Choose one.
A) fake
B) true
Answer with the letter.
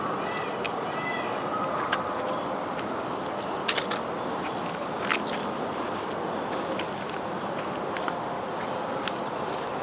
B